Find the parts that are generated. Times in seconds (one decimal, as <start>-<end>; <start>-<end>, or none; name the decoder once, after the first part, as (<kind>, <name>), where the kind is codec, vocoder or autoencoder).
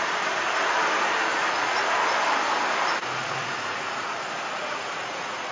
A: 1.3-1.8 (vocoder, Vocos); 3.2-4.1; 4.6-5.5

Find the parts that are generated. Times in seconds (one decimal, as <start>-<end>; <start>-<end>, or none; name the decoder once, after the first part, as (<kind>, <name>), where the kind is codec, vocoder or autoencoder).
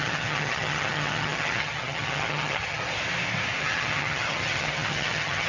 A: 0.0-2.8 (vocoder, HiFi-GAN); 3.6-5.5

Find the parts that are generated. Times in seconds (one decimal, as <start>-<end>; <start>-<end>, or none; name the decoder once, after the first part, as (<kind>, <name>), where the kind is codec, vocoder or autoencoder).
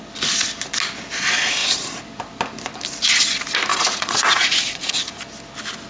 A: 3.7-5.2 (vocoder, Vocos)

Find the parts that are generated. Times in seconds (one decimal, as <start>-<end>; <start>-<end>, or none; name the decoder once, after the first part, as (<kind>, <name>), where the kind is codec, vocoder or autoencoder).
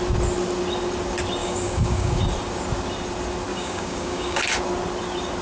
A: 1.4-2.2 (codec, DAC); 3.5-4.4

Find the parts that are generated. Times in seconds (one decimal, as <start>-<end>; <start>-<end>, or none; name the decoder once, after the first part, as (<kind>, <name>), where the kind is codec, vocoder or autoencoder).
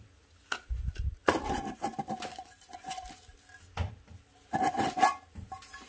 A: 2.3-3.0 (vocoder, Vocos)